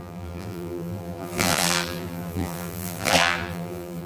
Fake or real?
fake